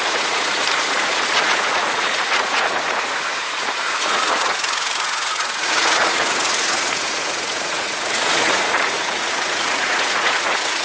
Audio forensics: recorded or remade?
remade